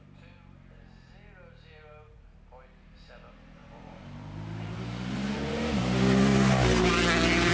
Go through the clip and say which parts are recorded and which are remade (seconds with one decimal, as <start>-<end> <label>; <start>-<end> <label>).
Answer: 0.0-3.6 recorded; 3.6-5.6 remade; 5.6-7.5 recorded